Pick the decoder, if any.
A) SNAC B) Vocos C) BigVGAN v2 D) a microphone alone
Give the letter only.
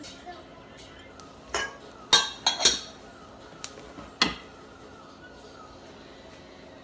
D